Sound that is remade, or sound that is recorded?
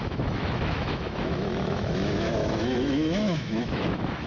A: remade